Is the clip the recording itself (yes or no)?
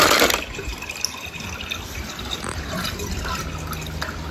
yes